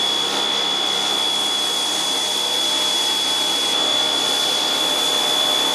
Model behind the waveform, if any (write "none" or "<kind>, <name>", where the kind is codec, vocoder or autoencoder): vocoder, BigVGAN v2